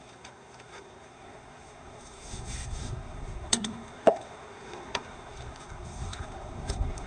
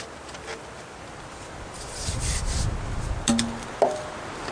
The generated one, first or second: first